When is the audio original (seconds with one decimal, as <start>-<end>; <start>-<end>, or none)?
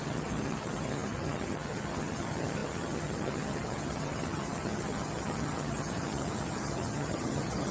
none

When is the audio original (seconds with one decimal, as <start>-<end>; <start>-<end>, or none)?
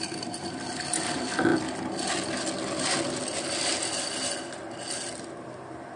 0.0-6.0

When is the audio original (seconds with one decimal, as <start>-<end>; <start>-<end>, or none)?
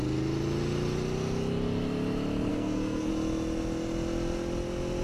0.0-2.5; 3.1-5.0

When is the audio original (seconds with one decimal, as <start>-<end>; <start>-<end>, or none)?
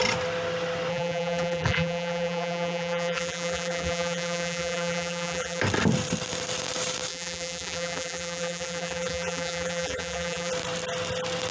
0.0-0.9; 5.6-7.1; 10.5-11.5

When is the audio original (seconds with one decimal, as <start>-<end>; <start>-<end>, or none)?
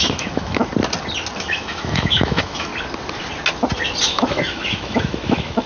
0.7-1.4; 2.7-4.1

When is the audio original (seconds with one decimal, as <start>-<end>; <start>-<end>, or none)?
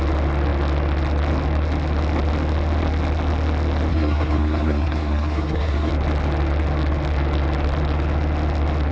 0.0-3.9; 5.9-8.9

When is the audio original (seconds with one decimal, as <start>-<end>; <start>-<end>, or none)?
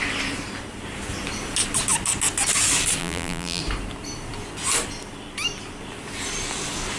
0.0-3.0; 3.6-7.0